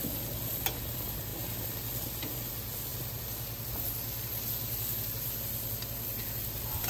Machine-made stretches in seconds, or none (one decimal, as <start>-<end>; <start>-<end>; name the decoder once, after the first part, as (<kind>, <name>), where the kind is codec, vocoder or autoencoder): none